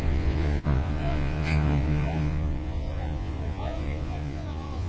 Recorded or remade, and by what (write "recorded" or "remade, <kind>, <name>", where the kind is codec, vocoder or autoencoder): remade, vocoder, Vocos